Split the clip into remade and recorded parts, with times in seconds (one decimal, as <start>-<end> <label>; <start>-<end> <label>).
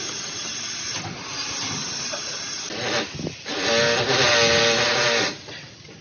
0.0-6.0 recorded